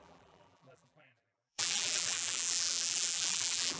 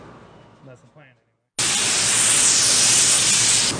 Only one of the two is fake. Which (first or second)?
first